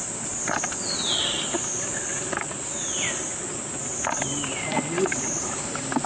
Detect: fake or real real